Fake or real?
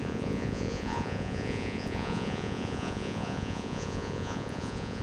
fake